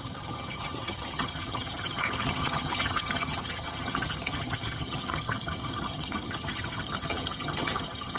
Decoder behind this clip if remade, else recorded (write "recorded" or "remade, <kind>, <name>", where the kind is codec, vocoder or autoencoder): remade, vocoder, HiFi-GAN